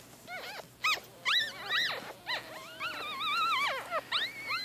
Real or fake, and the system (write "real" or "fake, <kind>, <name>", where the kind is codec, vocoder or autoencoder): real